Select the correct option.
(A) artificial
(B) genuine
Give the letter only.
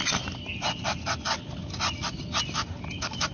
B